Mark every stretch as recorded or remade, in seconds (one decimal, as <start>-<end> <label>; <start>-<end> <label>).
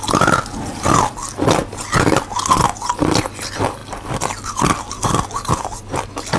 0.0-6.4 recorded